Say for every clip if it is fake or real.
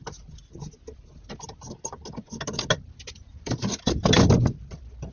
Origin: real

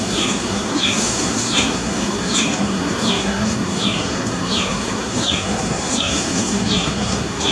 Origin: fake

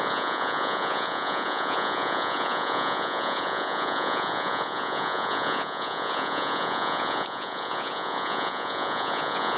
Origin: fake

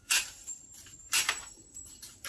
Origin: fake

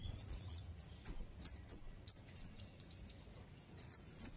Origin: fake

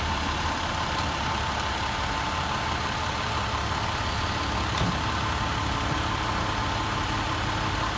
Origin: real